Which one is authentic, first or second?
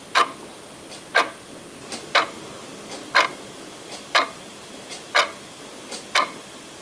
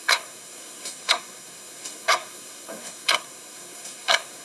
first